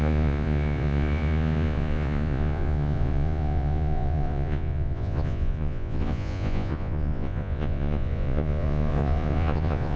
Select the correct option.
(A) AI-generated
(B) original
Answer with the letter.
A